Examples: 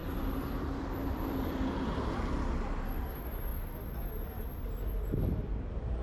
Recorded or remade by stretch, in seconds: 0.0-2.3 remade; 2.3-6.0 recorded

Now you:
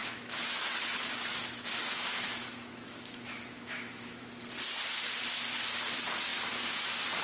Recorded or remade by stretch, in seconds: 0.0-4.3 remade; 4.3-7.2 recorded

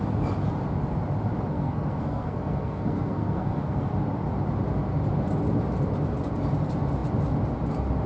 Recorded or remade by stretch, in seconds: 0.0-1.5 recorded; 1.5-3.9 remade; 3.9-8.1 recorded